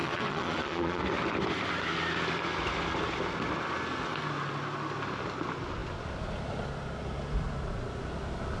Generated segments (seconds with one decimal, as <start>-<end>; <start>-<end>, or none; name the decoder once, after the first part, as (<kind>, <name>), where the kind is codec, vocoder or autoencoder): 0.0-1.0 (vocoder, Vocos)